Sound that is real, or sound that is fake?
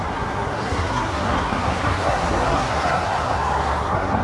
fake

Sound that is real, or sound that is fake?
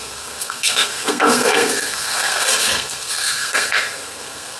fake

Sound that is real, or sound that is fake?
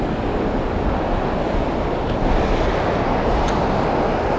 real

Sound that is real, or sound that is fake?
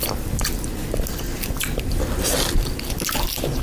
real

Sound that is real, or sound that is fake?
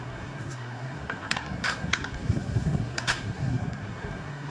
fake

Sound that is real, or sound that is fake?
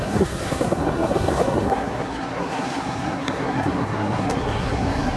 fake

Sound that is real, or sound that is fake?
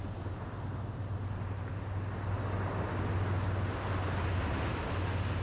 real